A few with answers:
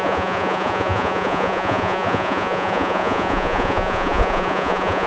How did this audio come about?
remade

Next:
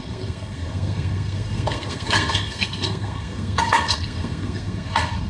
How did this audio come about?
remade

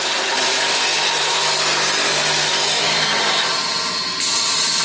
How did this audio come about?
recorded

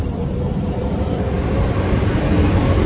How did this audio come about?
remade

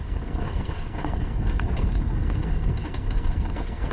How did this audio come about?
remade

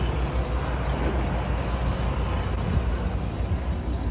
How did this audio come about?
recorded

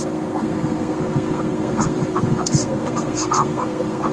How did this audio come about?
remade